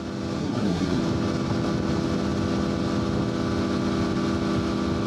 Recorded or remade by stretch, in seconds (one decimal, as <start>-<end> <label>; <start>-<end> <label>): 0.0-0.4 recorded; 0.4-1.0 remade; 1.0-5.1 recorded